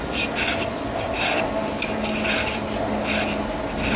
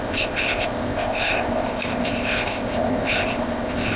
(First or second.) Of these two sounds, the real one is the first